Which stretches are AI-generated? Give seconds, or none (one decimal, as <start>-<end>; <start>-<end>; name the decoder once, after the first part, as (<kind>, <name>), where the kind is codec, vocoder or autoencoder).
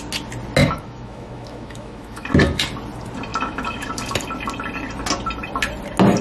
0.6-2.3 (autoencoder, DAC-VAE); 3.3-3.9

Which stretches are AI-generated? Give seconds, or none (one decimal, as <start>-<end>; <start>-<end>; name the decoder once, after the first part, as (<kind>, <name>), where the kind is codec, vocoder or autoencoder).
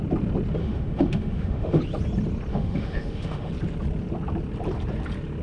0.6-1.8 (autoencoder, DAC-VAE); 2.5-3.5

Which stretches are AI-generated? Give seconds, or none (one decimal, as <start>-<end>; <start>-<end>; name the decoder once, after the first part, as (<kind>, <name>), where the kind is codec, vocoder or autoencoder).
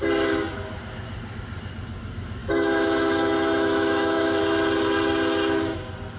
2.4-4.4 (autoencoder, DAC-VAE)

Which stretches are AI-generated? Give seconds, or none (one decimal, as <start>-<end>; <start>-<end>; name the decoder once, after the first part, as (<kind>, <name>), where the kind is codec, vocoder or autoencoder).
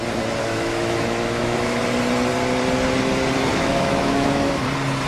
0.4-1.8 (autoencoder, DAC-VAE); 3.5-4.6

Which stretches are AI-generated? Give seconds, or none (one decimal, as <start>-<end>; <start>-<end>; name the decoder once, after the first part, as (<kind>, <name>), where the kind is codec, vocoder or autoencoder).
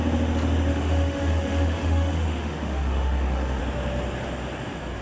0.7-3.6 (autoencoder, DAC-VAE)